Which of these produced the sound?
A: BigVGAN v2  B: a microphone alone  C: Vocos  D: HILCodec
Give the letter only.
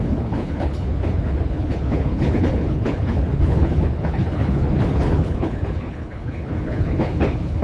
D